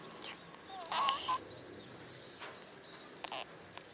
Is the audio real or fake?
real